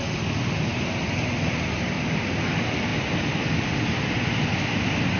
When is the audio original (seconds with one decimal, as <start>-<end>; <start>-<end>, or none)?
0.0-5.2